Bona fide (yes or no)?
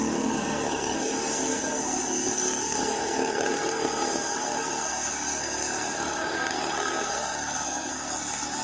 no